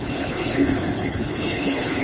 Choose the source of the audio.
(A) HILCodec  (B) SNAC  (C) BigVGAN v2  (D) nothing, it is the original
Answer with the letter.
A